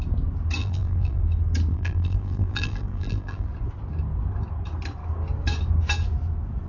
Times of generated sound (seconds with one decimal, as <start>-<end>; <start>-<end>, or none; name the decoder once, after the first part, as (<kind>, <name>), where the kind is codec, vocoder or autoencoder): 0.6-1.2 (vocoder, BigVGAN v2); 1.7-3.5